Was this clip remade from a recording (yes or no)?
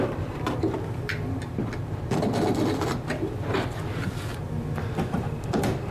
no